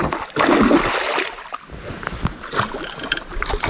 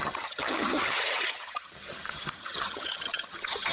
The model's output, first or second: second